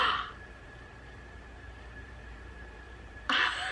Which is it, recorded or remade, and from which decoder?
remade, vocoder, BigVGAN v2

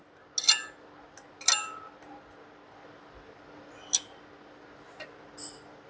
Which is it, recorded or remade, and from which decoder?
recorded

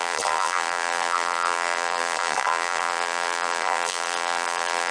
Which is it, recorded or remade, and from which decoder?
remade, vocoder, BigVGAN v2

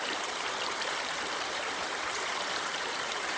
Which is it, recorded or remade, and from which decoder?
remade, vocoder, BigVGAN v2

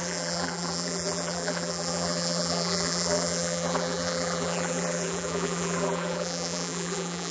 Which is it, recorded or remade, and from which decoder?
remade, vocoder, BigVGAN v2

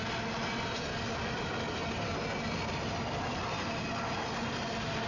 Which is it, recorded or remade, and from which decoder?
recorded